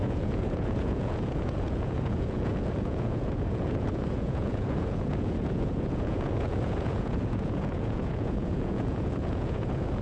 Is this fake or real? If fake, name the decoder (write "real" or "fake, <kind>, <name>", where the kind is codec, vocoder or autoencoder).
fake, vocoder, Vocos